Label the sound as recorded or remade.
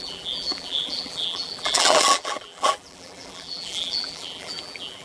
remade